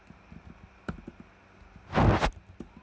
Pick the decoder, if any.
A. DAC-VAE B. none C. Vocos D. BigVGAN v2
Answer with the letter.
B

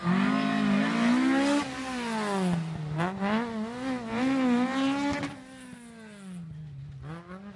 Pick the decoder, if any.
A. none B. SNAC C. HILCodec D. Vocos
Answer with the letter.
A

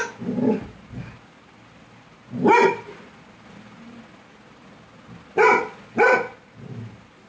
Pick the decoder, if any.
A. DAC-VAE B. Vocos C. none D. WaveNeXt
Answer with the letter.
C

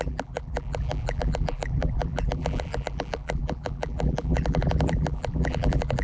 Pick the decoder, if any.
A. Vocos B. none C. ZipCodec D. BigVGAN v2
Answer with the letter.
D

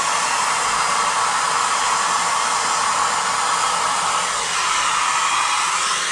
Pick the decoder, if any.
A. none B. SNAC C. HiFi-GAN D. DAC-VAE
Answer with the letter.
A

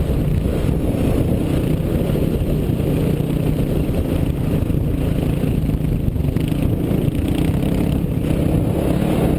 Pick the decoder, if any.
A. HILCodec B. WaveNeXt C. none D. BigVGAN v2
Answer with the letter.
C